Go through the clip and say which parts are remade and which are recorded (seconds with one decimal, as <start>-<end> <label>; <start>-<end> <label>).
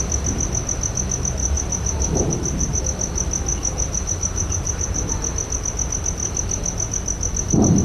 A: 0.0-1.4 recorded; 1.4-2.8 remade; 2.8-3.5 recorded; 3.5-5.1 remade; 5.1-7.8 recorded